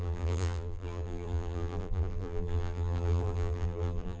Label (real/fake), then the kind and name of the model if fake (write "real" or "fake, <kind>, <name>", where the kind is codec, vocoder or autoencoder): fake, vocoder, BigVGAN v2